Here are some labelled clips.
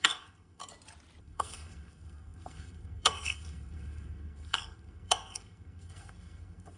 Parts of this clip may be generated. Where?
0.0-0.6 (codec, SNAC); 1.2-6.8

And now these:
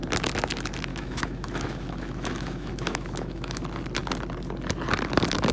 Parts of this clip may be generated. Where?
0.9-3.6 (autoencoder, DAC-VAE)